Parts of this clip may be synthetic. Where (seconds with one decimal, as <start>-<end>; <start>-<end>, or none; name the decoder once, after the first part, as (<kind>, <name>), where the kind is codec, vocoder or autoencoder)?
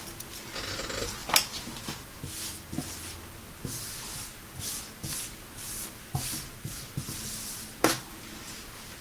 1.2-1.8 (vocoder, BigVGAN v2)